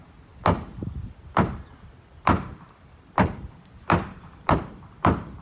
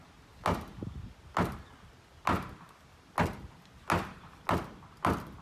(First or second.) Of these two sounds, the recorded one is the second